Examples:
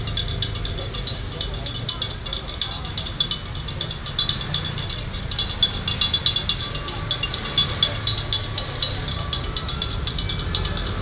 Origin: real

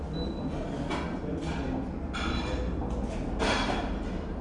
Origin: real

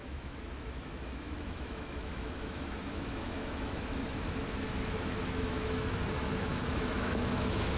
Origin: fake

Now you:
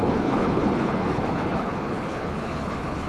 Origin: fake